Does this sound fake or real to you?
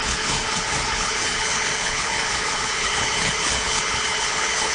fake